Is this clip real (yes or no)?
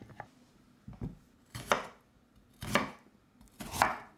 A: yes